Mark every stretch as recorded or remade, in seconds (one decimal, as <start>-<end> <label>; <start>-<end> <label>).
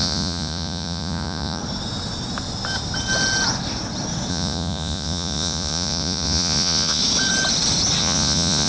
0.0-1.6 remade; 1.6-4.3 recorded; 4.3-7.0 remade; 7.0-8.0 recorded; 8.0-8.7 remade